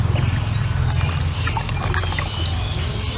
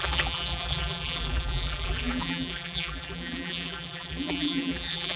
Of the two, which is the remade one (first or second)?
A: second